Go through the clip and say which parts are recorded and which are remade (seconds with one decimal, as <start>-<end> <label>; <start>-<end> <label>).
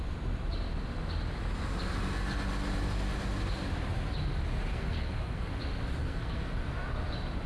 0.0-4.7 recorded; 4.7-5.5 remade; 5.5-6.0 recorded; 6.0-6.5 remade; 6.5-7.5 recorded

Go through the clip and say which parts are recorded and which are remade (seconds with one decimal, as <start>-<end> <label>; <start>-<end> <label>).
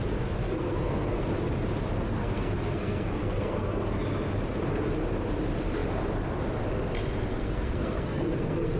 0.0-0.4 recorded; 0.4-1.3 remade; 1.3-2.1 recorded; 2.1-3.8 remade; 3.8-7.3 recorded; 7.3-8.8 remade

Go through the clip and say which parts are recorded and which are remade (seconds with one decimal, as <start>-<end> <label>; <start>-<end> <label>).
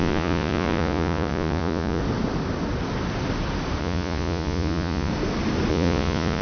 0.0-2.0 remade; 2.0-3.8 recorded; 3.8-5.1 remade; 5.1-5.7 recorded; 5.7-6.4 remade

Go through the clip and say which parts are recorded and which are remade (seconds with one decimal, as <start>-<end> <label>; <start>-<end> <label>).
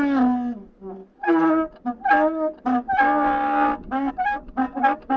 0.0-5.2 recorded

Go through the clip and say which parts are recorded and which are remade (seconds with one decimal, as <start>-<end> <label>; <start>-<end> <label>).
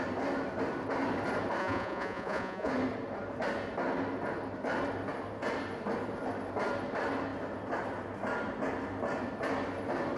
0.0-1.6 recorded; 1.6-2.7 remade; 2.7-10.2 recorded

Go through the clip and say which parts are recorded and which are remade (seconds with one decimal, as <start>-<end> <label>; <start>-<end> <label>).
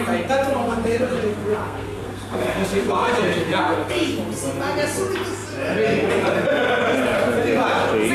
0.0-0.6 recorded; 0.6-3.9 remade; 3.9-8.1 recorded